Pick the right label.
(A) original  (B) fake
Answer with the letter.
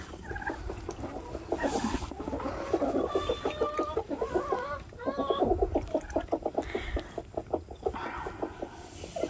A